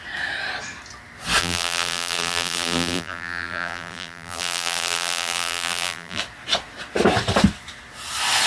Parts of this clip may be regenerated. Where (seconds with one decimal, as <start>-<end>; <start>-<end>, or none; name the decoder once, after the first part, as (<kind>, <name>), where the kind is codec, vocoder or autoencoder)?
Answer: 1.4-6.2 (vocoder, BigVGAN v2)